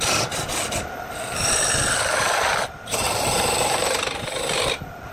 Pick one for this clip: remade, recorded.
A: recorded